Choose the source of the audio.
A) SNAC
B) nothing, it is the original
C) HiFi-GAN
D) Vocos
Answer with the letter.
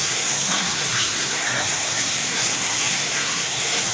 A